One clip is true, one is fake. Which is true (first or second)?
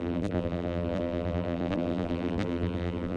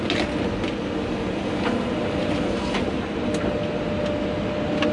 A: second